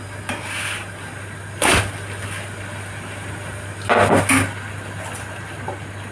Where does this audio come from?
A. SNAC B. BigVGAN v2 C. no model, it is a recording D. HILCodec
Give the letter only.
C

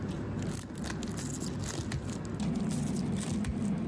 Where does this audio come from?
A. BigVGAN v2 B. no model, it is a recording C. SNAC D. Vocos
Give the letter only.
B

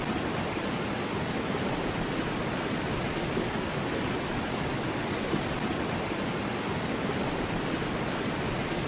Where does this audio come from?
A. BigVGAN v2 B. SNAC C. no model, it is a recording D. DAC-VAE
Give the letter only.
C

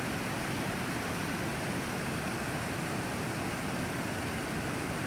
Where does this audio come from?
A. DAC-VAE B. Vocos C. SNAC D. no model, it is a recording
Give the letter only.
D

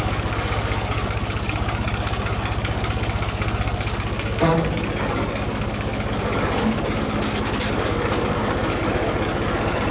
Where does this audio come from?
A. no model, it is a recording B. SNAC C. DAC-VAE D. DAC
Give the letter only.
D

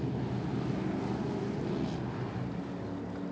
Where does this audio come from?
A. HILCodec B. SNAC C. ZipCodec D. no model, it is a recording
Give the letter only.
D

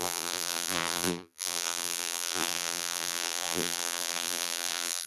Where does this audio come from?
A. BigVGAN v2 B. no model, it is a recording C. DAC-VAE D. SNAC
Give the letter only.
A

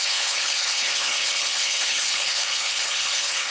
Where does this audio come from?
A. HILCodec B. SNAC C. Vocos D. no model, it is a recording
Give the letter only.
A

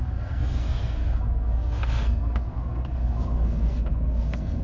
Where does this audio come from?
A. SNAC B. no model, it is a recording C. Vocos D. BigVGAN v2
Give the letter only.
A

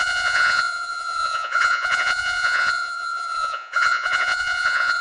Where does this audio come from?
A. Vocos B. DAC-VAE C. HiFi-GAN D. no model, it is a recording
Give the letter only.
A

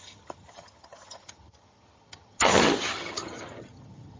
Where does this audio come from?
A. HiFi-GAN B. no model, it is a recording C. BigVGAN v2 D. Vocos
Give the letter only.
A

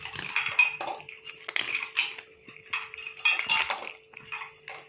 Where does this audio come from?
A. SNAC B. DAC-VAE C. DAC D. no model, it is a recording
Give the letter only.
D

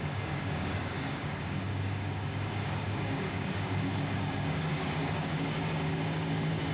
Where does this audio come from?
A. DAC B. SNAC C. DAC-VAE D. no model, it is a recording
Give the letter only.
A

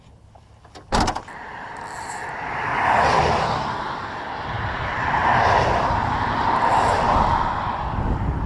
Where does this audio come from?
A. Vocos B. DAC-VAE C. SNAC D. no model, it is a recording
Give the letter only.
D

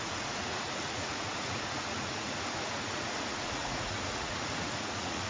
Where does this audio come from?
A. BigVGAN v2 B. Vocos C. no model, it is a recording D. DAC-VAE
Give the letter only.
B